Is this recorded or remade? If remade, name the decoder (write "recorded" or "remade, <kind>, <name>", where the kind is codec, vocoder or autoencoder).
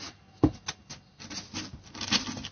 recorded